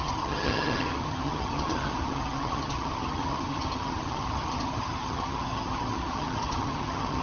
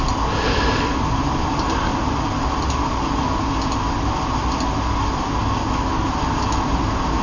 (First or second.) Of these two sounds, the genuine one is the second